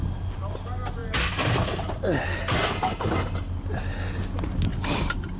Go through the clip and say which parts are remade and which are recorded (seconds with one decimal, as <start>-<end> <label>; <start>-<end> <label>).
0.0-4.7 recorded; 4.7-5.4 remade